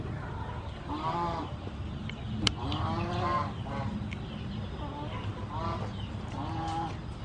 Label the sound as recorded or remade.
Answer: recorded